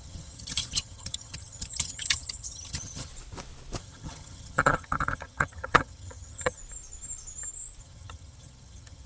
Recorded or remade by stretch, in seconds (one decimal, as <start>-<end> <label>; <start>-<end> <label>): 0.0-3.1 remade; 3.1-3.8 recorded; 3.8-6.6 remade; 6.6-7.8 recorded; 7.8-9.1 remade